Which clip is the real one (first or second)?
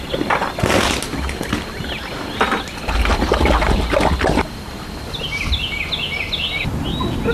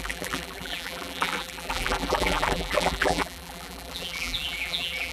first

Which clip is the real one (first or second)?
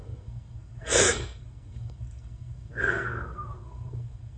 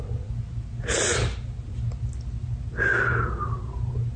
second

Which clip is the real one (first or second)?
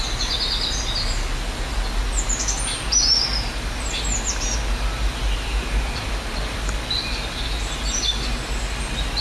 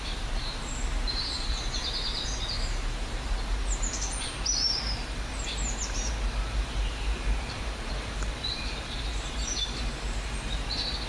first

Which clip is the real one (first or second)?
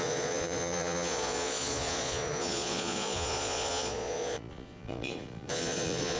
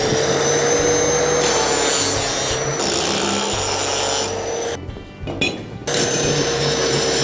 second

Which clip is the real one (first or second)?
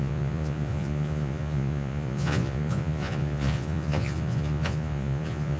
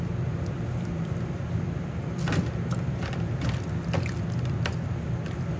second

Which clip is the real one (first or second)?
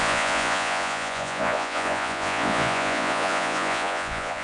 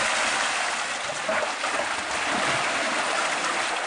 second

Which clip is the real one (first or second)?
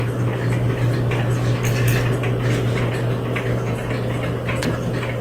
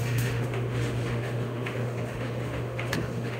first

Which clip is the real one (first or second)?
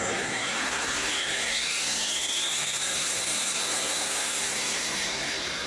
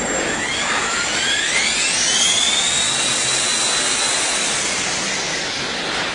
second